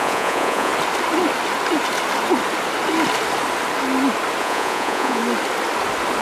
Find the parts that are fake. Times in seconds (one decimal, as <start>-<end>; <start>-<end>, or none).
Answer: 0.0-0.7; 4.4-5.2